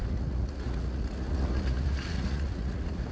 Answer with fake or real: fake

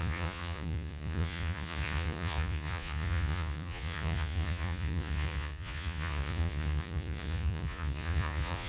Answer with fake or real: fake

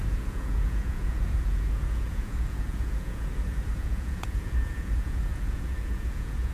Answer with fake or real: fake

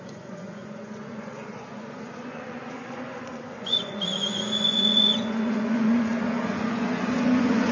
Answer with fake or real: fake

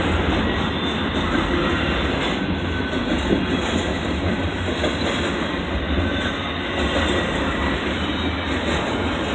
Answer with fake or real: real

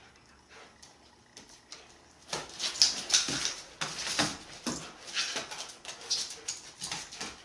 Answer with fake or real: real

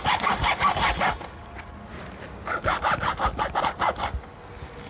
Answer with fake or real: real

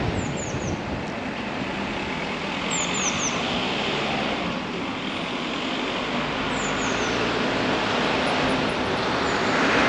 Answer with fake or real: real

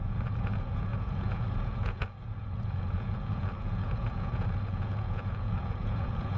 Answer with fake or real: fake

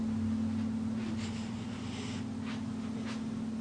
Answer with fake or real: real